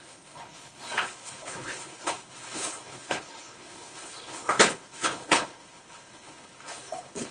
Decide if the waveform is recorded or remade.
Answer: remade